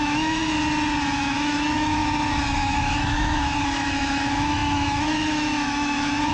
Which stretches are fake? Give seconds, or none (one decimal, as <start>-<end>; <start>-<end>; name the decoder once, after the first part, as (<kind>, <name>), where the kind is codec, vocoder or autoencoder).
0.0-0.4 (autoencoder, DAC-VAE); 1.2-2.0; 2.6-6.3